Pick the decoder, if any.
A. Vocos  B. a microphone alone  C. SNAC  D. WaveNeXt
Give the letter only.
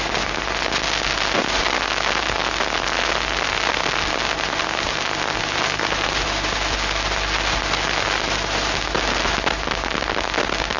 B